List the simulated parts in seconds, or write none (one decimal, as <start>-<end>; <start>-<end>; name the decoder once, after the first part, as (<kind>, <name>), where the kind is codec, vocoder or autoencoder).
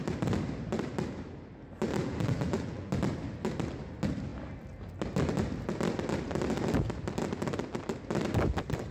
1.9-2.9 (vocoder, BigVGAN v2)